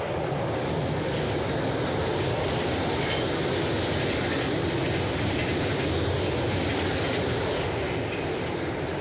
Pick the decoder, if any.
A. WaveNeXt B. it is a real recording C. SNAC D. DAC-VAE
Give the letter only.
B